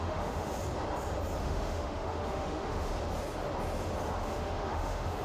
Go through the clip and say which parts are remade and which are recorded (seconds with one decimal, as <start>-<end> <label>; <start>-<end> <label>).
0.0-0.5 remade; 0.5-1.4 recorded; 1.4-2.9 remade; 2.9-4.2 recorded; 4.2-5.2 remade